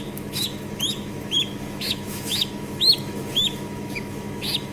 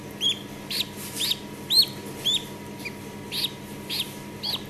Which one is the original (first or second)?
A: second